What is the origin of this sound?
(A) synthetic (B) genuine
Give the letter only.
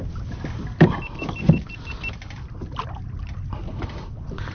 B